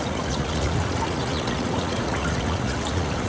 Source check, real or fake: fake